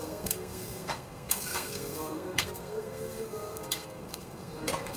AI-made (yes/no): yes